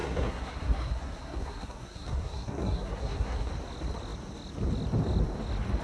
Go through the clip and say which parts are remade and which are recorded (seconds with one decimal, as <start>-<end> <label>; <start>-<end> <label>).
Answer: 0.0-3.5 remade; 3.5-5.8 recorded